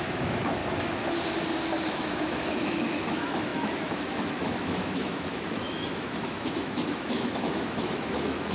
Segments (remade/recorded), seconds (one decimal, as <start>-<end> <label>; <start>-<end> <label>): 0.0-0.6 remade; 0.6-1.9 recorded; 1.9-8.5 remade

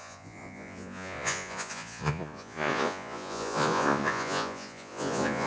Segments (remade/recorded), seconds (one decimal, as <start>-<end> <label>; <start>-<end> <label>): 0.0-5.5 remade

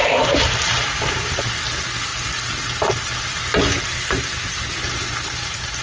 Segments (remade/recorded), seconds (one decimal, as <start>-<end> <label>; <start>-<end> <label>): 0.0-5.8 recorded

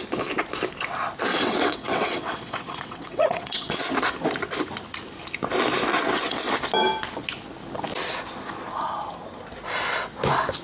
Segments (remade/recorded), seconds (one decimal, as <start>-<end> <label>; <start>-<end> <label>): 0.0-1.3 recorded; 1.3-3.9 remade; 3.9-5.9 recorded; 5.9-6.4 remade; 6.4-10.6 recorded

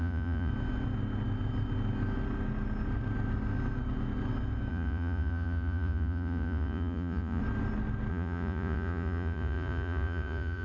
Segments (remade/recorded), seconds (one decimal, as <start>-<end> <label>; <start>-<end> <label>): 0.0-0.5 remade; 0.5-4.7 recorded; 4.7-7.4 remade; 7.4-8.1 recorded; 8.1-10.6 remade